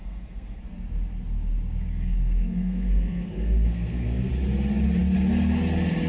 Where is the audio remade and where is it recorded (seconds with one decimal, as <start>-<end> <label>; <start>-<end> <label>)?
0.0-0.6 remade; 0.6-1.9 recorded; 1.9-4.3 remade; 4.3-6.1 recorded